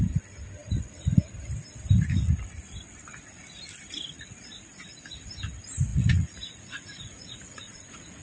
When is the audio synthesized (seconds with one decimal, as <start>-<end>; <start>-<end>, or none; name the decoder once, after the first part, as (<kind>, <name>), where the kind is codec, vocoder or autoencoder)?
5.9-8.2 (vocoder, Vocos)